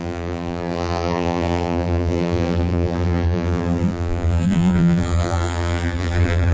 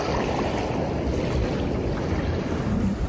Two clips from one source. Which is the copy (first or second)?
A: first